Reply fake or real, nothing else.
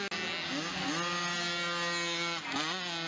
real